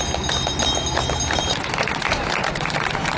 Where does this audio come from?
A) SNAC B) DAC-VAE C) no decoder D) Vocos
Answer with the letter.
C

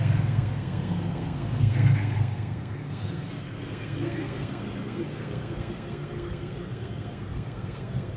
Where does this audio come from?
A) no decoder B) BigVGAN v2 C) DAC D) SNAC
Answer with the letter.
D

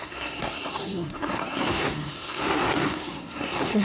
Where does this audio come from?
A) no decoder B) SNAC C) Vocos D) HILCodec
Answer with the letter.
B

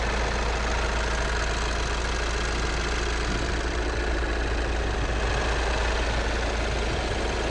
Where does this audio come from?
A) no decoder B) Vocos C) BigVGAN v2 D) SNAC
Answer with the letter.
A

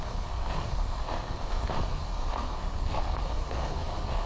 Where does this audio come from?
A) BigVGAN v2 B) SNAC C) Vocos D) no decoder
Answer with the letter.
B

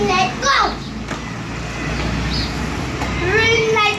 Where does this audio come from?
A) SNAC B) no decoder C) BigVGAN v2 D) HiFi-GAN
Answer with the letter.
B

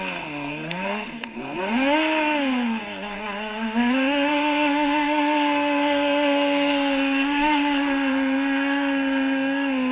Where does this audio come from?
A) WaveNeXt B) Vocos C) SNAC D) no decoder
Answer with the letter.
C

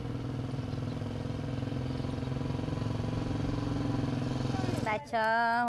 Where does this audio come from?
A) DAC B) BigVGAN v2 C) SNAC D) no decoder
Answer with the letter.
D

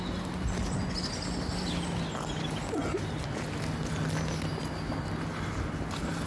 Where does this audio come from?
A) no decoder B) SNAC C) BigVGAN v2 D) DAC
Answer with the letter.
A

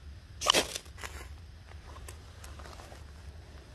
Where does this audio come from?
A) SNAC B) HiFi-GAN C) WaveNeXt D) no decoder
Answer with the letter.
D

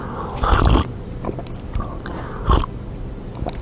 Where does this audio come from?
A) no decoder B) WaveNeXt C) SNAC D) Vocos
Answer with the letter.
A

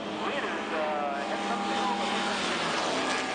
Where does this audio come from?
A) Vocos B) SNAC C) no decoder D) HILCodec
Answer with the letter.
C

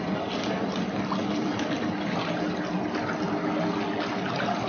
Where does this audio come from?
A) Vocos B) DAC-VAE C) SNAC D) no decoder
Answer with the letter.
D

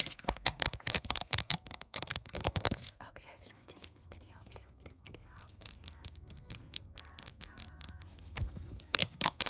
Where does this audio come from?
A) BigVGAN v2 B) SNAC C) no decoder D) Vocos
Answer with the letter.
B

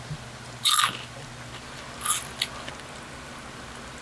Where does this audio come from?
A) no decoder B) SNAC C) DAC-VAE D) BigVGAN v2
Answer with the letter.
A